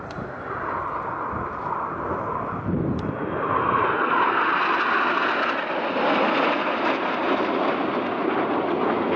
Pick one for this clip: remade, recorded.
recorded